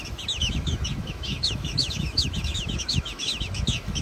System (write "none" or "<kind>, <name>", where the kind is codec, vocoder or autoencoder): autoencoder, DAC-VAE